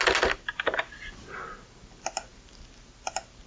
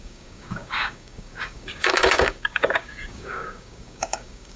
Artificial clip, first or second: second